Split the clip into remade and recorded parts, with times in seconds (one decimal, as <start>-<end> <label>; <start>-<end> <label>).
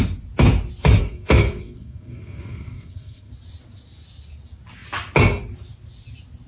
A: 0.0-1.0 recorded; 1.0-3.3 remade; 3.3-6.5 recorded